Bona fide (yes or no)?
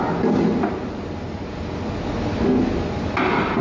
yes